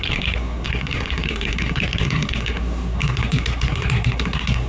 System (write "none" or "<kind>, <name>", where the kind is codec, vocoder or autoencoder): codec, SNAC